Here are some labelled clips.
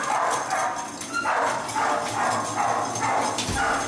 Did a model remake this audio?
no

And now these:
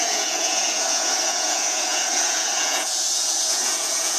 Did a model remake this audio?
yes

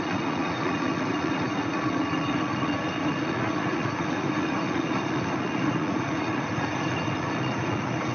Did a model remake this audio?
yes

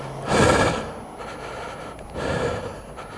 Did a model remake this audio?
no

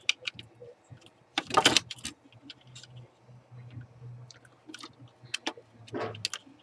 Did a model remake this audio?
no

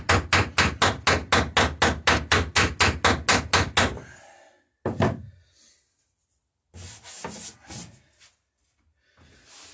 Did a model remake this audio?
no